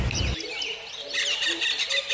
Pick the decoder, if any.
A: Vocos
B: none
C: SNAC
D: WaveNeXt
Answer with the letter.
B